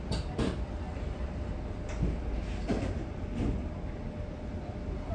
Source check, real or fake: real